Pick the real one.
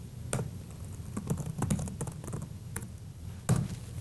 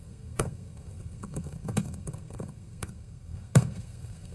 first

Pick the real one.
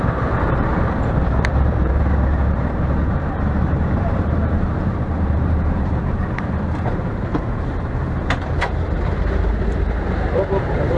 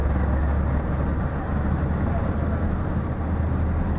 second